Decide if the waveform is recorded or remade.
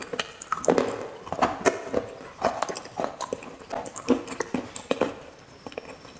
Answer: recorded